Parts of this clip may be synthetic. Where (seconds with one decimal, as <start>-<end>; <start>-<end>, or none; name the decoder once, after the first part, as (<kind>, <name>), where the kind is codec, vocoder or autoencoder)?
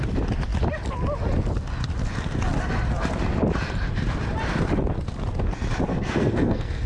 5.9-6.9 (codec, SNAC)